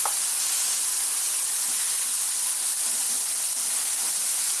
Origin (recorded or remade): recorded